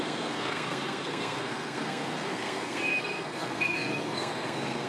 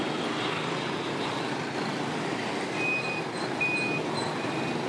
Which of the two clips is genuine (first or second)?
second